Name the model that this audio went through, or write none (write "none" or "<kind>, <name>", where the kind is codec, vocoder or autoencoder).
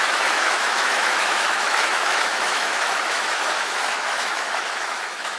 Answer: autoencoder, DAC-VAE